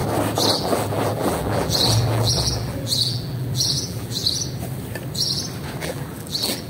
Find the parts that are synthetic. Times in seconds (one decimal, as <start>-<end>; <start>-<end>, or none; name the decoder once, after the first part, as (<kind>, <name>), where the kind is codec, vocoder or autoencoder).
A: 0.5-4.2 (vocoder, BigVGAN v2); 5.8-6.7

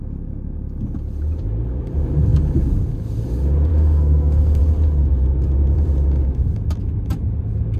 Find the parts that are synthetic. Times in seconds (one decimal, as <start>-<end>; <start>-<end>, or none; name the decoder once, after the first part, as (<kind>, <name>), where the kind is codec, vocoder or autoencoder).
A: 3.7-4.6 (codec, SNAC)

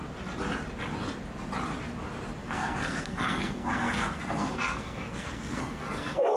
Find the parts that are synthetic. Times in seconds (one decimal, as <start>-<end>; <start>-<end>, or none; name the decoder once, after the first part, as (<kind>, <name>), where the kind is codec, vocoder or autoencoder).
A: 2.4-6.4 (codec, SNAC)

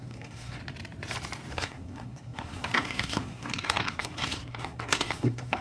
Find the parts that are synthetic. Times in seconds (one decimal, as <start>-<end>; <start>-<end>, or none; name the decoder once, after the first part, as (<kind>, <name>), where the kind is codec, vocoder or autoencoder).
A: 0.0-0.6 (codec, SNAC); 1.5-5.6

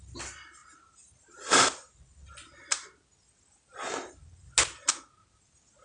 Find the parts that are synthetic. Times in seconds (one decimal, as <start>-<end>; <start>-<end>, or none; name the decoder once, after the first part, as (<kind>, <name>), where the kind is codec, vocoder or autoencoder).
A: none

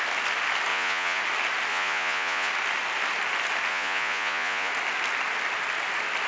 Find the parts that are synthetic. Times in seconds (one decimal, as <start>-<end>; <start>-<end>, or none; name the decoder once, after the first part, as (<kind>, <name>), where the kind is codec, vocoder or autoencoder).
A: 0.7-1.2 (vocoder, Vocos); 1.7-2.5; 3.7-4.7

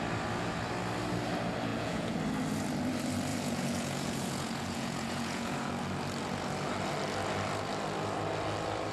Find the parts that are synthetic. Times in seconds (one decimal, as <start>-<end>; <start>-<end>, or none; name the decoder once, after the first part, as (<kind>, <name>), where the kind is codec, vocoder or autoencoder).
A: 1.7-2.2 (vocoder, Vocos); 3.3-5.7